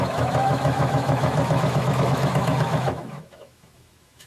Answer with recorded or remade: remade